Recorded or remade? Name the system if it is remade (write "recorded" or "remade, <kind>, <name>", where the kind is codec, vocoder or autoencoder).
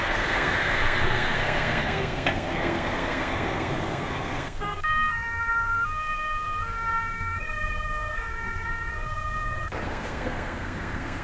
remade, codec, SNAC